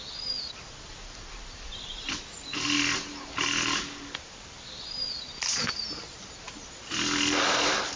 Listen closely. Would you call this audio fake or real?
real